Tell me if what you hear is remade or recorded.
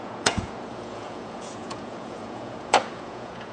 remade